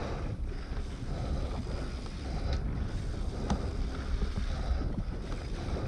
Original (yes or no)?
yes